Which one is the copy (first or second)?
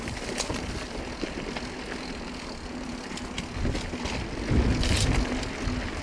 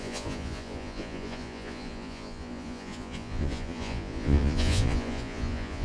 second